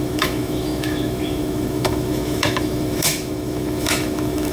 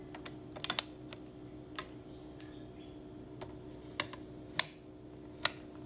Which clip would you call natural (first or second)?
second